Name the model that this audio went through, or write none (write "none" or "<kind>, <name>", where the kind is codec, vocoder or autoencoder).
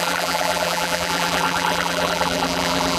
vocoder, BigVGAN v2